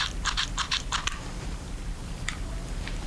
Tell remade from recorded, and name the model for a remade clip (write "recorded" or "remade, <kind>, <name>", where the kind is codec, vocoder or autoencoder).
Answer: remade, vocoder, BigVGAN v2